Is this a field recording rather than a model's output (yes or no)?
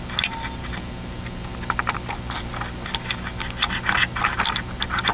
yes